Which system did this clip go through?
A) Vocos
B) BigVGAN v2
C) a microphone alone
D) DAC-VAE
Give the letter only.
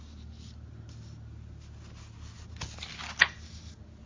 C